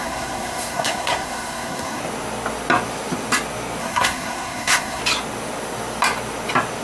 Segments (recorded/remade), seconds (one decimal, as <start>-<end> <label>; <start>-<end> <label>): 0.0-2.0 remade; 2.0-3.8 recorded; 3.8-5.0 remade; 5.0-6.8 recorded